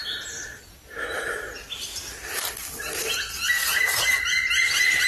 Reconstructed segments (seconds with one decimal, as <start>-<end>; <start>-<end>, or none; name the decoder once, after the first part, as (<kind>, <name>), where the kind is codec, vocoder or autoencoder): none